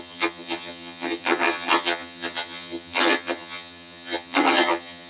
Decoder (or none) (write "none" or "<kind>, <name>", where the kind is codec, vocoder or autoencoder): vocoder, HiFi-GAN